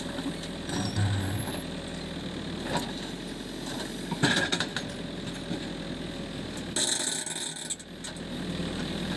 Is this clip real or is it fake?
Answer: real